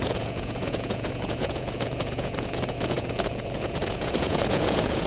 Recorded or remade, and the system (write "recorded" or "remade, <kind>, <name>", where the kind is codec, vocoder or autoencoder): remade, vocoder, Vocos